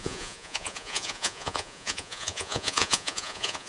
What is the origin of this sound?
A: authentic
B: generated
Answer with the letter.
B